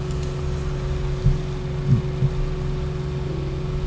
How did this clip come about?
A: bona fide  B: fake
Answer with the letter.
A